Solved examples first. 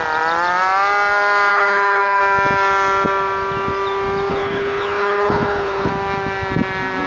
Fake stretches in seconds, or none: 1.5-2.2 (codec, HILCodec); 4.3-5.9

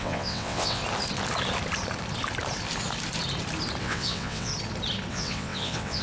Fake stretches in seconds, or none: 0.0-0.8 (vocoder, WaveNeXt); 3.8-4.5; 5.1-6.0

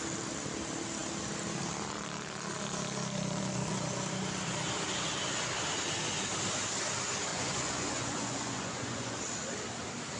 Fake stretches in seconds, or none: 7.3-9.2 (vocoder, Vocos)

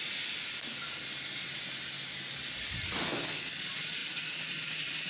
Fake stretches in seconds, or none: none

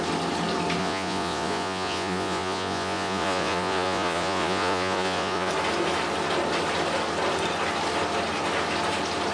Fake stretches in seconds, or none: 0.8-5.5 (vocoder, Vocos)

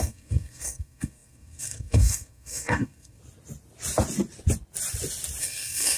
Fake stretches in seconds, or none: 0.0-3.2 (codec, SNAC); 5.4-6.0

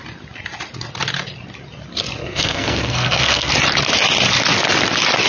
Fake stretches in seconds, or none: 2.2-3.5 (codec, SNAC)

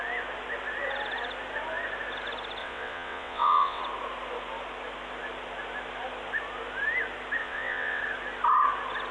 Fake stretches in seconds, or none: 2.6-3.8 (vocoder, WaveNeXt); 7.4-8.0